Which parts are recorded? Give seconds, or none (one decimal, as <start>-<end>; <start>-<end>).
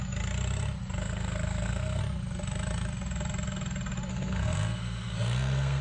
0.0-1.0; 2.0-4.1